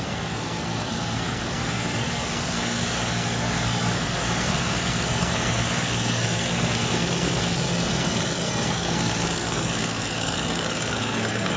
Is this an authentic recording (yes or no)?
no